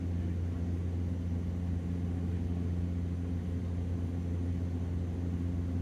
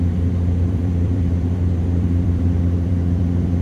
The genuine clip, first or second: first